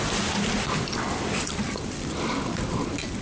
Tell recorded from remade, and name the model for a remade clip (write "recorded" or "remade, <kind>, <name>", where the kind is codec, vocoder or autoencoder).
remade, vocoder, BigVGAN v2